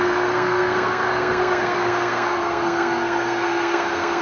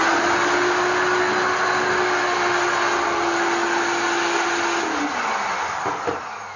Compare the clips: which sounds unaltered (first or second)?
second